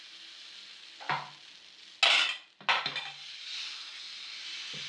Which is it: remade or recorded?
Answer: recorded